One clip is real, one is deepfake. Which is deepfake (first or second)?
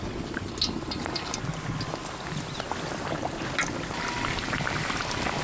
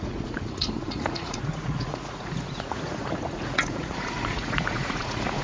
second